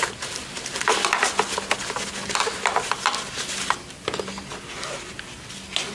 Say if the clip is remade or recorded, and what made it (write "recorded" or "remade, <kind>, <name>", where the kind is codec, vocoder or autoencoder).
recorded